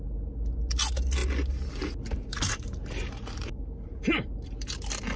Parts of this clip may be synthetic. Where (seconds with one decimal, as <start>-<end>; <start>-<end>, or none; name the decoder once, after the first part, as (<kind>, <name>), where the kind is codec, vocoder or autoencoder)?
2.3-4.2 (vocoder, BigVGAN v2)